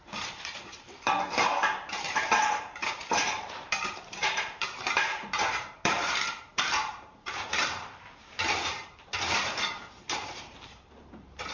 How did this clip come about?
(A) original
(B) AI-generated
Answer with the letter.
B